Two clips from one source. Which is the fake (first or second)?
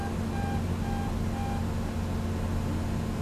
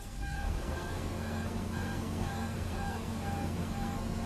second